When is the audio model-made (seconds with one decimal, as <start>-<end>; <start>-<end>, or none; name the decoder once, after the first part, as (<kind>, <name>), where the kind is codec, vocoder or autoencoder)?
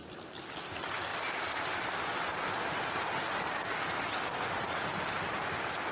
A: 1.1-4.1 (vocoder, BigVGAN v2)